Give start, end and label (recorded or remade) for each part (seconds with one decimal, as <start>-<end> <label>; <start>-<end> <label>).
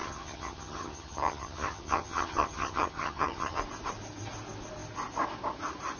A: 0.0-3.6 remade; 3.6-6.0 recorded